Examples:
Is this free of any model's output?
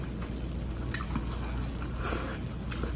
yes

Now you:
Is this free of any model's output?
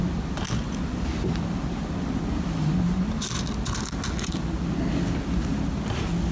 yes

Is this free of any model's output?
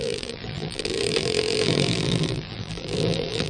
no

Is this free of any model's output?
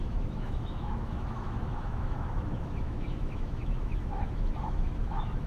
no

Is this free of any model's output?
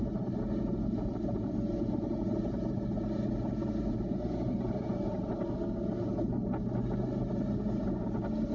yes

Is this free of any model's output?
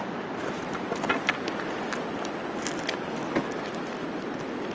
yes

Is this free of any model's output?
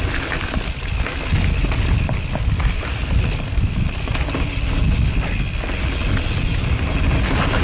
yes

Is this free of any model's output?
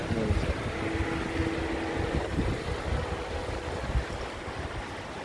yes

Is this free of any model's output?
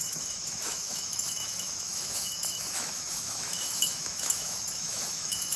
no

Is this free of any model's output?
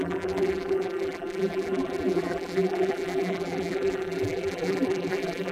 no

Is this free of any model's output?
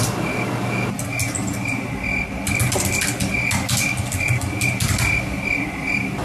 yes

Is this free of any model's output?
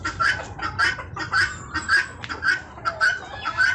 yes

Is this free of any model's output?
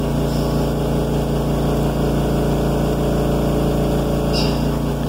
yes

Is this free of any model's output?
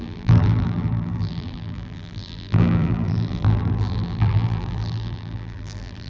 no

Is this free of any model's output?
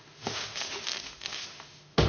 no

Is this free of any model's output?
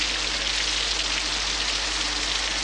yes